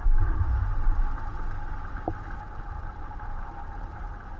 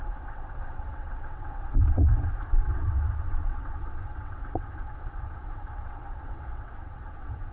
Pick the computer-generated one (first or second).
second